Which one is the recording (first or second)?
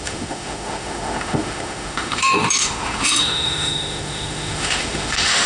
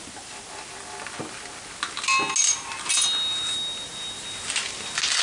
second